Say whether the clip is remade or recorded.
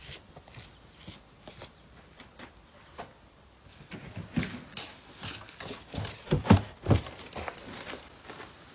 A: recorded